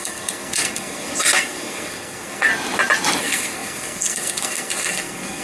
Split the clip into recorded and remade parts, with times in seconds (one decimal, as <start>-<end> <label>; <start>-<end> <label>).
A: 0.0-2.5 remade; 2.5-3.2 recorded; 3.2-5.4 remade